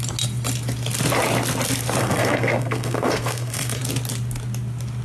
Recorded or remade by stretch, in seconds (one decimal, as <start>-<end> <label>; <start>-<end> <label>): 0.0-2.0 recorded; 2.0-3.8 remade; 3.8-5.0 recorded